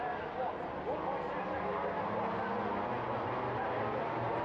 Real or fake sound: real